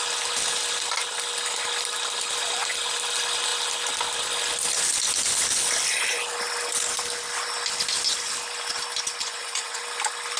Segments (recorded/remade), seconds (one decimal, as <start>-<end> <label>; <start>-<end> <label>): 0.0-9.2 recorded; 9.2-9.8 remade; 9.8-10.4 recorded

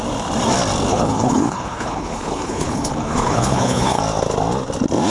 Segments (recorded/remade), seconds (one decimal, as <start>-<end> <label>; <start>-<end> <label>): 0.0-0.9 recorded; 0.9-4.0 remade; 4.0-5.1 recorded

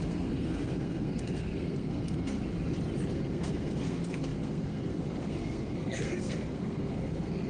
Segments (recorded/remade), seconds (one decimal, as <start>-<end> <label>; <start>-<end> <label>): 0.0-2.4 remade; 2.4-3.1 recorded; 3.1-7.5 remade

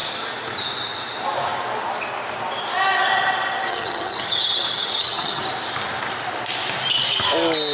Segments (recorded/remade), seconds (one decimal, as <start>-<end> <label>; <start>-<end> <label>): 0.0-3.7 recorded; 3.7-5.4 remade; 5.4-7.7 recorded

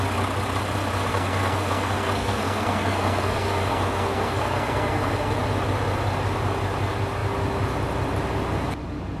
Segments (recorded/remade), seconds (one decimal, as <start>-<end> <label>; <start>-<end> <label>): 0.0-1.1 recorded; 1.1-5.3 remade; 5.3-9.2 recorded

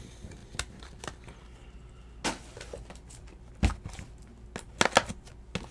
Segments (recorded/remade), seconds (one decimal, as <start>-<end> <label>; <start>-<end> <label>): 0.0-0.4 recorded; 0.4-1.0 remade; 1.0-5.7 recorded

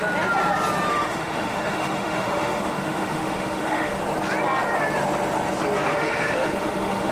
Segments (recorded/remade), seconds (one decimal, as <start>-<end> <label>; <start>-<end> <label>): 0.0-0.9 recorded; 0.9-4.0 remade; 4.0-5.9 recorded; 5.9-7.1 remade

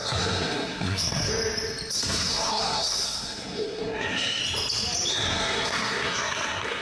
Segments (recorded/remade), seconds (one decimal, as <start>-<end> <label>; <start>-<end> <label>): 0.0-1.3 remade; 1.3-1.9 recorded; 1.9-4.4 remade; 4.4-5.1 recorded; 5.1-6.8 remade